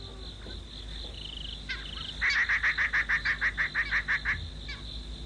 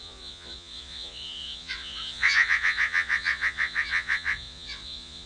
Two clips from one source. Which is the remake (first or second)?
second